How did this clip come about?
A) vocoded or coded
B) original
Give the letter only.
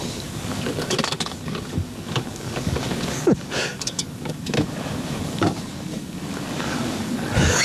A